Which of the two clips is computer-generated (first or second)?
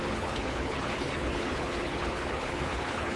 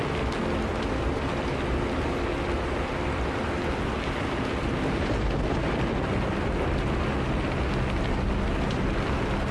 first